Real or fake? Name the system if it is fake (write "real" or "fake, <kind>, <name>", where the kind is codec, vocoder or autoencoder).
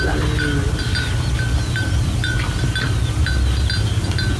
real